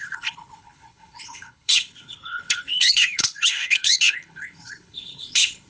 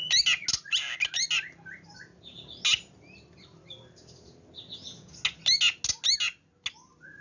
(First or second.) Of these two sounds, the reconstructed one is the first